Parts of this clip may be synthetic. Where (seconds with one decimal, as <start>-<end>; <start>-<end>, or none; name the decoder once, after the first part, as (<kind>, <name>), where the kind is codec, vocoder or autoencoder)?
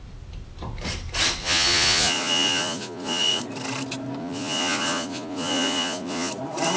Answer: 1.4-3.4 (vocoder, Vocos); 4.2-6.3